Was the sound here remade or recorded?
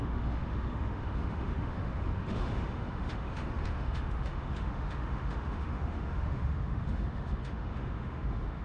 remade